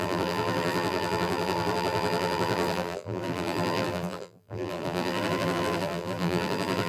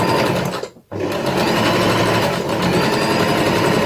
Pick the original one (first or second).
second